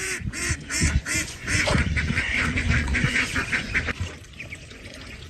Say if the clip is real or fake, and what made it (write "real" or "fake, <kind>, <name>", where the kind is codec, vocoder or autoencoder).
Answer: fake, vocoder, Vocos